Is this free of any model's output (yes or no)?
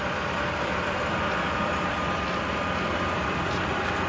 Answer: yes